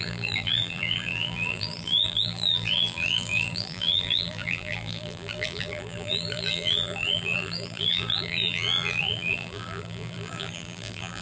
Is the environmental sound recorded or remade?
remade